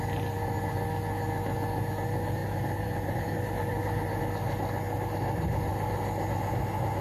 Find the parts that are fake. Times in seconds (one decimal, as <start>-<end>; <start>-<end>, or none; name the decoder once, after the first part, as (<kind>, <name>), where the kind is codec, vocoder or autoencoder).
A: 2.4-4.2 (vocoder, BigVGAN v2)